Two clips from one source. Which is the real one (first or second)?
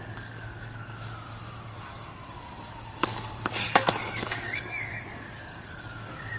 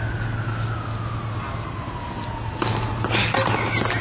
second